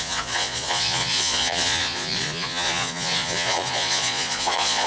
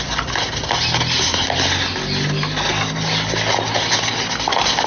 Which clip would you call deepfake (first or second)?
first